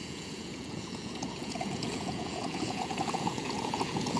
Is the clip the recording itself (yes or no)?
no